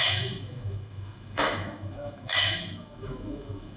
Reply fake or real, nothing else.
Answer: fake